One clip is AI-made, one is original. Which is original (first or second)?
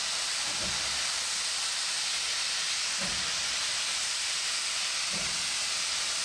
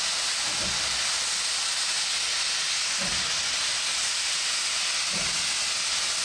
second